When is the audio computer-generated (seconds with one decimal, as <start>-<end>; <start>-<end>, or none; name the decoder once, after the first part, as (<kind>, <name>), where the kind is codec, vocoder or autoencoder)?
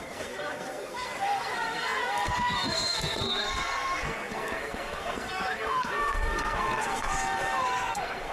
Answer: 0.0-8.3 (codec, SNAC)